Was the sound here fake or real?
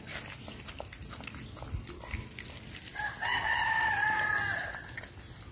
real